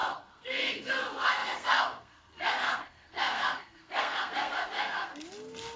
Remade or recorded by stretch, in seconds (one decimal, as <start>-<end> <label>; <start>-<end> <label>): 0.0-5.1 remade; 5.1-5.8 recorded